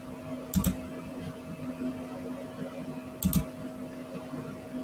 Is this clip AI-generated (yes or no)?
no